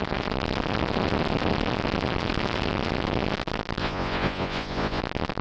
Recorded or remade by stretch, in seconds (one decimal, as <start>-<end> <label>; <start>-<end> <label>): 0.0-3.8 recorded; 3.8-5.0 remade; 5.0-5.4 recorded